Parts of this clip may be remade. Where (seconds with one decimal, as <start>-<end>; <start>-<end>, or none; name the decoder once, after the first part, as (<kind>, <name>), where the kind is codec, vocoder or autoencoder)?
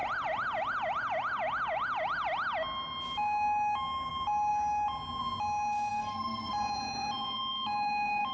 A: 5.9-6.5 (codec, SNAC)